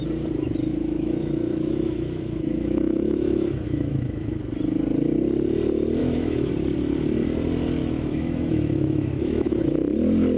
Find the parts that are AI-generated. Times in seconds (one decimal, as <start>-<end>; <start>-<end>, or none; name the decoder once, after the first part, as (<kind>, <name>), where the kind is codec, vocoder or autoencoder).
0.7-4.4 (autoencoder, DAC-VAE); 6.0-6.5; 7.8-9.6